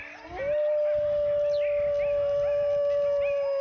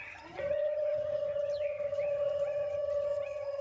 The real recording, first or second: first